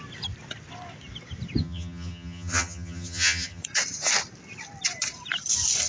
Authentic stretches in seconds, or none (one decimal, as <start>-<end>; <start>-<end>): 0.0-1.6; 3.6-5.9